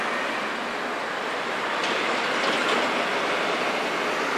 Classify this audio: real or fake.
real